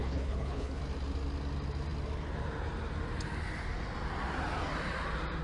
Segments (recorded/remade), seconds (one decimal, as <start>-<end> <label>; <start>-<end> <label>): 0.0-0.8 remade; 0.8-5.4 recorded